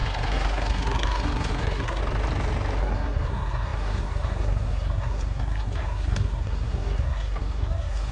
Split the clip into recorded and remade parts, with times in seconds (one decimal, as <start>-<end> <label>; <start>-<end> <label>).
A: 0.0-2.0 remade; 2.0-2.8 recorded; 2.8-8.1 remade